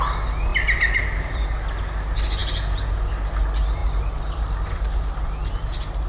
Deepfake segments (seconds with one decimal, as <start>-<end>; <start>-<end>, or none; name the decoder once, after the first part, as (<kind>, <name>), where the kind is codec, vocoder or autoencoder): 0.0-0.5 (vocoder, BigVGAN v2); 1.0-6.1